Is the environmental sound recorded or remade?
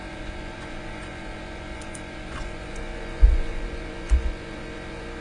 remade